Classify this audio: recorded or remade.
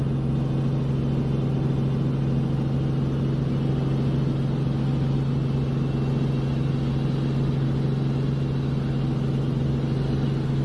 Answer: recorded